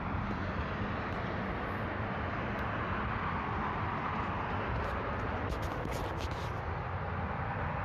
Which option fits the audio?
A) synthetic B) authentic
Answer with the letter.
B